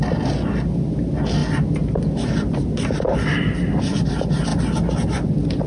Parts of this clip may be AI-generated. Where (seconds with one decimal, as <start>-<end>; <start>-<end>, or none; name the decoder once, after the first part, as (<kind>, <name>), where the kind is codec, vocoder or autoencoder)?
none